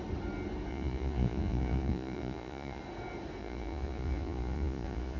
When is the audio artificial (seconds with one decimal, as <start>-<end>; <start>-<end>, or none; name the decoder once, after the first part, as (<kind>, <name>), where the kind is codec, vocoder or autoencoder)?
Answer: 0.7-2.8 (vocoder, Vocos); 3.4-5.2